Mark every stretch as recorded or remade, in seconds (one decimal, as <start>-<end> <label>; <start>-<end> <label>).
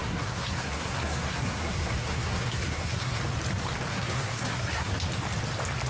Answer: 0.0-3.2 remade; 3.2-3.9 recorded; 3.9-4.9 remade; 4.9-5.9 recorded